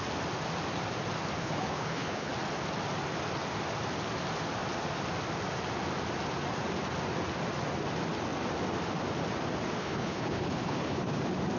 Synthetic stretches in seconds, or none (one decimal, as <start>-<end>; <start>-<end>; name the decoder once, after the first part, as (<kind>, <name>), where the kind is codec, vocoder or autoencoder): 1.4-2.3 (codec, HILCodec); 9.8-11.2